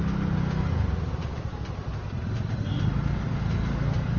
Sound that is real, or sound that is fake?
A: real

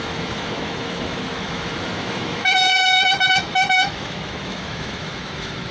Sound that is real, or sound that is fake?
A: fake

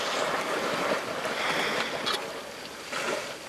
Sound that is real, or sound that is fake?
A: real